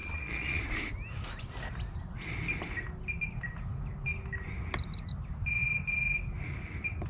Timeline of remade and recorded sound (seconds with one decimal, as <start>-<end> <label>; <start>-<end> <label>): 0.0-0.6 remade; 0.6-7.1 recorded